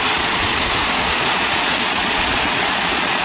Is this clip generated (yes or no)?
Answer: yes